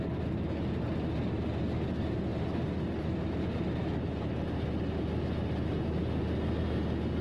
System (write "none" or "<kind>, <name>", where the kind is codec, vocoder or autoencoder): none